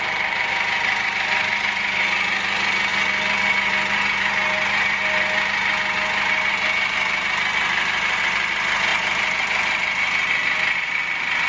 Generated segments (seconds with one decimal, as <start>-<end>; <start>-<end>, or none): none